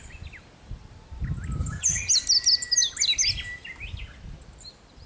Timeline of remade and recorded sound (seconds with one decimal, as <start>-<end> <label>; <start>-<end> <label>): 0.0-1.6 recorded; 1.6-2.1 remade; 2.1-5.1 recorded